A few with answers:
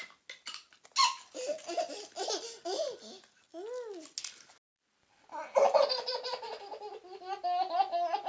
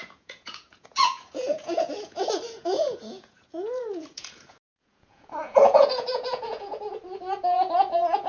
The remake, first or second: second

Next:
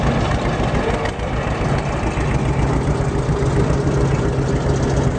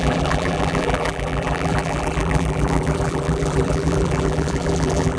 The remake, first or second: second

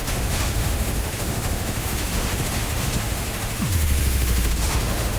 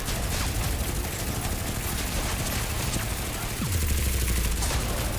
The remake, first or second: first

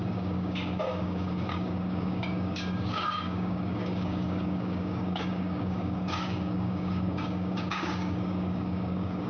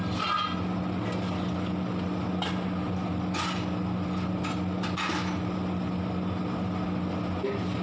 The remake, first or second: first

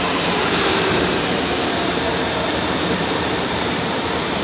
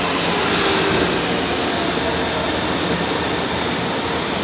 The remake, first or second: first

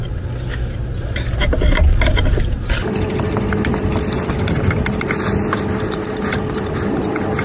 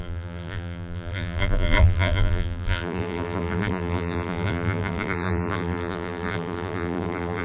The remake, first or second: second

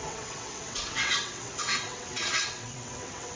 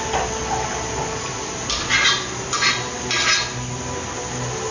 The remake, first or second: first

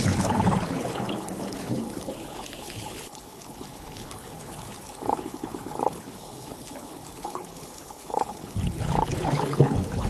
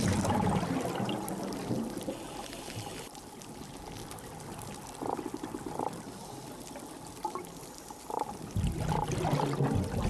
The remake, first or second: first